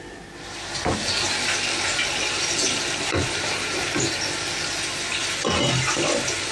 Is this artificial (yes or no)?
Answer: no